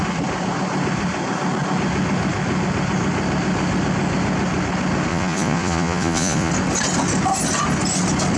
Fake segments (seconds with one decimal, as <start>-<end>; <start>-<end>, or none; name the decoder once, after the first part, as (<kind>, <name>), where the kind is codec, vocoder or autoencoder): 5.1-6.5 (vocoder, Vocos)